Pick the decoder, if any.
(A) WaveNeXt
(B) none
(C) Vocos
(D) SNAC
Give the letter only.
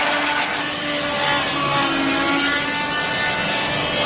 B